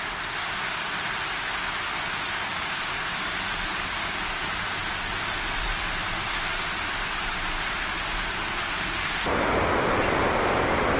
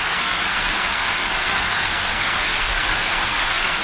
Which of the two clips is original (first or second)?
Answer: first